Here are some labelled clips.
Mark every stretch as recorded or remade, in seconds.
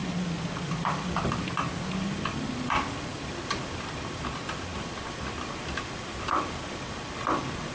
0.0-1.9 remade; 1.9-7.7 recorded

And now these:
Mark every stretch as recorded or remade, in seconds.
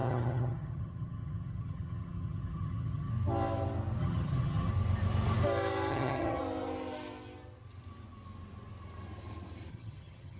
0.0-3.1 remade; 3.1-4.0 recorded; 4.0-4.7 remade; 4.7-5.9 recorded; 5.9-6.4 remade; 6.4-9.7 recorded; 9.7-10.4 remade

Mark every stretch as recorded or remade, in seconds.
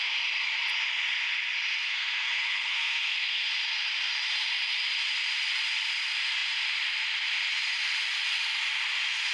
0.0-1.9 recorded; 1.9-3.5 remade; 3.5-9.3 recorded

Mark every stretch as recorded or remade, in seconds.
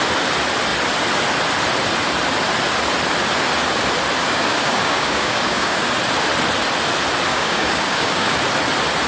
0.0-4.2 recorded; 4.2-5.9 remade; 5.9-7.3 recorded; 7.3-8.3 remade; 8.3-9.1 recorded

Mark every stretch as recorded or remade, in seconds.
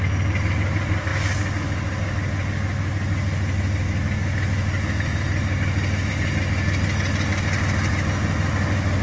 0.0-9.0 recorded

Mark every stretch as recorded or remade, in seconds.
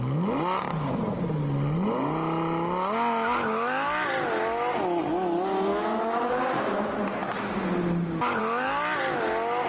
0.0-5.7 recorded; 5.7-6.3 remade; 6.3-9.7 recorded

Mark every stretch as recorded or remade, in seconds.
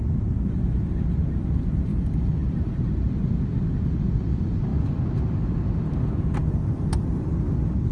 0.0-1.9 recorded; 1.9-2.8 remade; 2.8-6.4 recorded; 6.4-7.3 remade; 7.3-7.9 recorded